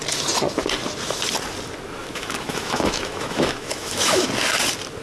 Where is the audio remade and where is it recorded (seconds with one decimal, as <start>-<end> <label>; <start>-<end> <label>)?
0.0-2.0 recorded; 2.0-4.3 remade; 4.3-5.0 recorded